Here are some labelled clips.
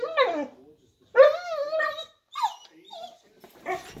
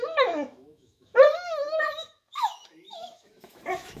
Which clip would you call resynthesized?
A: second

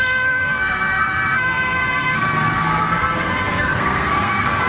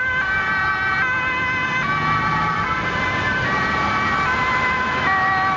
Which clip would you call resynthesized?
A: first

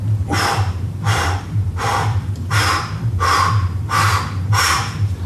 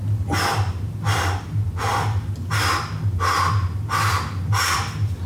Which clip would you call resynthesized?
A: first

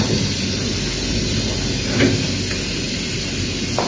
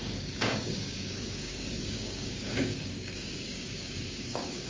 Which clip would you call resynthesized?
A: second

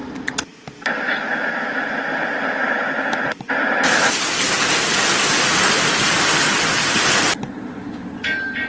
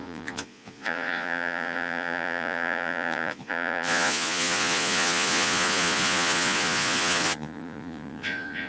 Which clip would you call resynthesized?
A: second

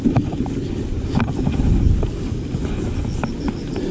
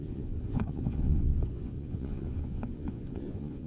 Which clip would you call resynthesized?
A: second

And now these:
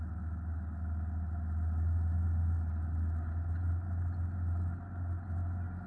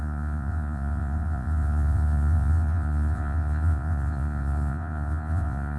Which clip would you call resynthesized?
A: second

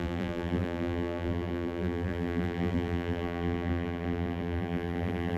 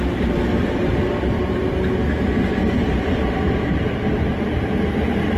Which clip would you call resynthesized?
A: first